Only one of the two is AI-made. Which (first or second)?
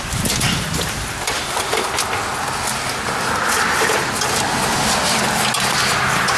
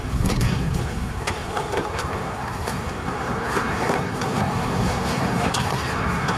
second